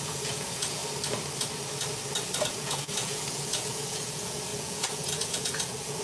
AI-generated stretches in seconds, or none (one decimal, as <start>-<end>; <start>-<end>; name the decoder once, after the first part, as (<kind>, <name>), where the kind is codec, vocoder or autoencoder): 0.0-0.8 (vocoder, Vocos); 2.5-6.0